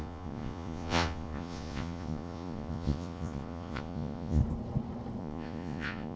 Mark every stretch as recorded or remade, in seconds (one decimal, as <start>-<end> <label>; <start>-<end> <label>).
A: 0.0-4.4 remade; 4.4-5.2 recorded; 5.2-6.2 remade

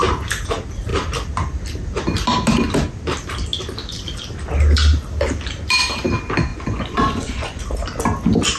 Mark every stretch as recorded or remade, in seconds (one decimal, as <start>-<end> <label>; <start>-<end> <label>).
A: 0.0-6.5 recorded; 6.5-7.6 remade; 7.6-8.6 recorded

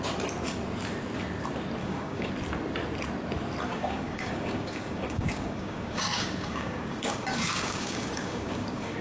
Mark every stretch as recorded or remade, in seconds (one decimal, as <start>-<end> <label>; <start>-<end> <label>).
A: 0.0-1.8 recorded; 1.8-2.3 remade; 2.3-3.7 recorded; 3.7-9.0 remade

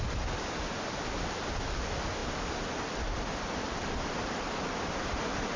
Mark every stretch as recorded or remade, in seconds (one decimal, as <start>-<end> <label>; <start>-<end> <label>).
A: 0.0-5.6 recorded

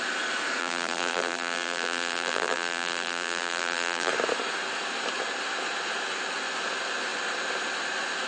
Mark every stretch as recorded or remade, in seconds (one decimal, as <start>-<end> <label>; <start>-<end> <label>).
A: 0.0-0.6 recorded; 0.6-4.1 remade; 4.1-8.3 recorded